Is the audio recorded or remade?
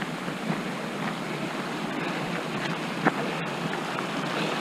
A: recorded